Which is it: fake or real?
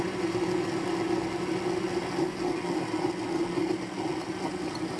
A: real